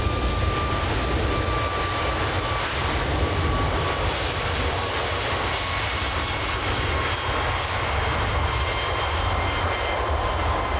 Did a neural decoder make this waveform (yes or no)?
no